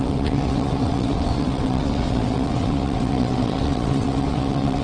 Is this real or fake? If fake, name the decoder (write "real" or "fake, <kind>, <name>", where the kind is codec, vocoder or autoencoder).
fake, vocoder, WaveNeXt